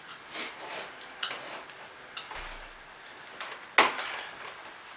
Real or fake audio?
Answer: real